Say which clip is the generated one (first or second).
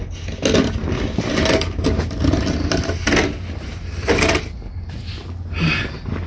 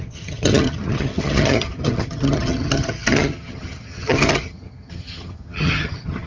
second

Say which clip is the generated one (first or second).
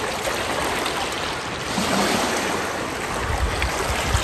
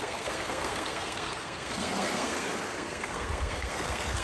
second